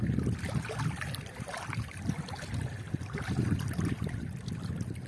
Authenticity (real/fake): real